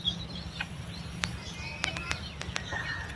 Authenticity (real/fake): real